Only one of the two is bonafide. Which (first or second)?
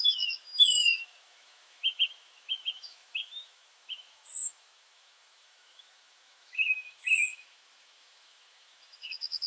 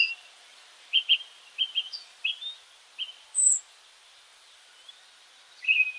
second